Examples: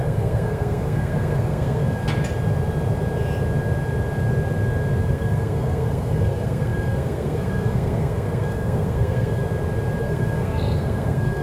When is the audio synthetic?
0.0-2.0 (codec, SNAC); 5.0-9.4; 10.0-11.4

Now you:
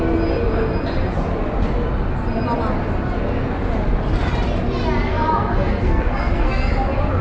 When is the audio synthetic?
5.1-6.7 (codec, SNAC)

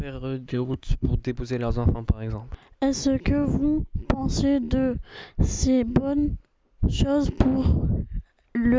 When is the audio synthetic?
0.5-1.1 (codec, SNAC)